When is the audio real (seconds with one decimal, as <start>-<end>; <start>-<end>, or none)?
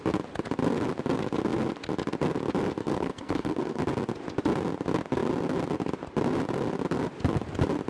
0.0-2.8; 3.8-7.9